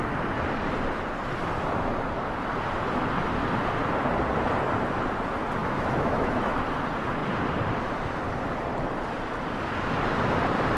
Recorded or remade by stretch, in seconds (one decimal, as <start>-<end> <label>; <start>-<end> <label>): 0.0-5.6 recorded; 5.6-6.5 remade; 6.5-10.8 recorded